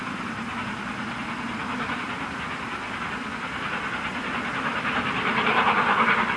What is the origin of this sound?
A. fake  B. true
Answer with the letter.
B